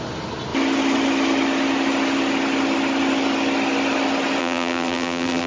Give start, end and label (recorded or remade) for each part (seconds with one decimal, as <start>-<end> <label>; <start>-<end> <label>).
0.0-4.4 recorded; 4.4-5.5 remade

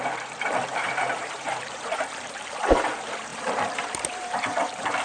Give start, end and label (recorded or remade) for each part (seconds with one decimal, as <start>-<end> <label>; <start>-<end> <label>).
0.0-5.0 remade